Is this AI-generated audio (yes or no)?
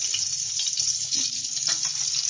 no